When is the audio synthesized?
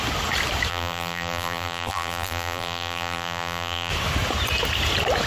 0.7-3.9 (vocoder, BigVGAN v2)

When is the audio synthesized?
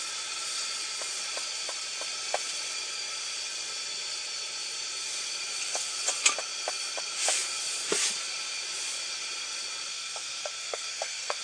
9.9-11.4 (codec, SNAC)